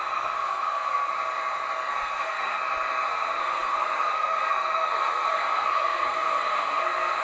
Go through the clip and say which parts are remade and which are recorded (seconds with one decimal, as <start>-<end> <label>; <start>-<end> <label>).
0.0-1.1 remade; 1.1-1.9 recorded; 1.9-2.6 remade; 2.6-3.1 recorded; 3.1-7.2 remade

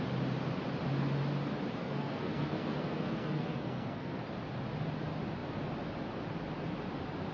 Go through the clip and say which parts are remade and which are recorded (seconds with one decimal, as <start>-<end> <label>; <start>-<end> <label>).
0.0-1.8 recorded; 1.8-4.2 remade; 4.2-7.3 recorded

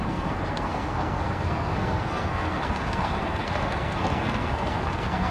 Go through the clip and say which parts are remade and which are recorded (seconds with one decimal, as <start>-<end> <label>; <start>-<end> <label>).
0.0-5.3 remade

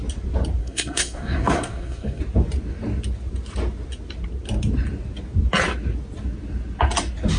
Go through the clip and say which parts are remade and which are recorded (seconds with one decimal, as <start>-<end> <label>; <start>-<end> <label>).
0.0-0.6 recorded; 0.6-2.2 remade; 2.2-7.4 recorded

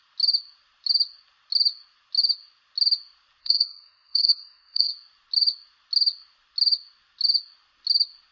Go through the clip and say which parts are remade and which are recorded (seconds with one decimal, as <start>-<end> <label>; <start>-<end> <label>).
0.0-3.4 recorded; 3.4-4.9 remade; 4.9-8.3 recorded